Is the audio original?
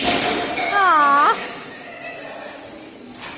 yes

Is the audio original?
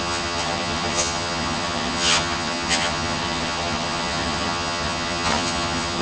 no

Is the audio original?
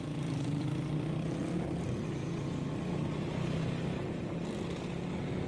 yes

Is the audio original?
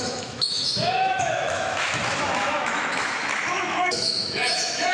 no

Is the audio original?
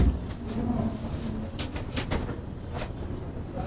yes